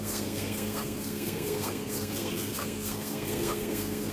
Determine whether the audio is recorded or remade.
remade